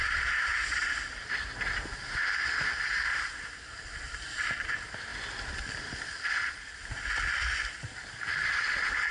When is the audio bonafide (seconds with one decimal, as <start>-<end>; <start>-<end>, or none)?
0.0-9.1